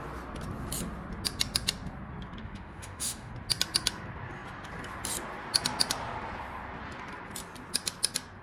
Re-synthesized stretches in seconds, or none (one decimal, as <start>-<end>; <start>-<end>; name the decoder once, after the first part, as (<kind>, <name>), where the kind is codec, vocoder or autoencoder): 2.4-3.3 (autoencoder, DAC-VAE)